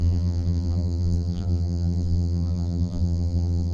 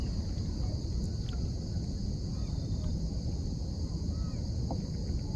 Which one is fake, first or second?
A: first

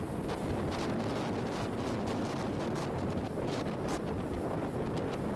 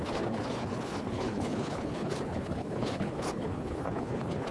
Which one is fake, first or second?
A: second